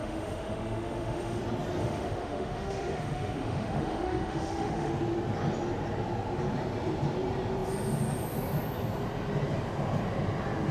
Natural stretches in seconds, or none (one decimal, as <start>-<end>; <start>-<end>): 1.4-1.8; 4.9-10.7